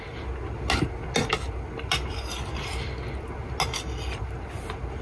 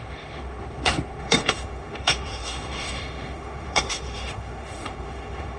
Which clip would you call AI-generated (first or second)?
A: second